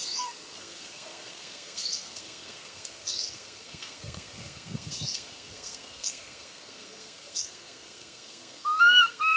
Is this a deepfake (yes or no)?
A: yes